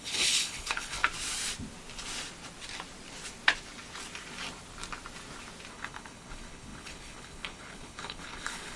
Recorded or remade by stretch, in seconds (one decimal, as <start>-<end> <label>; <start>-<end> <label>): 0.0-1.0 remade; 1.0-5.7 recorded; 5.7-8.8 remade